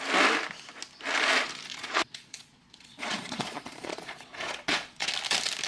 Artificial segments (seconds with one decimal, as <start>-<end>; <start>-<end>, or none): 1.7-5.1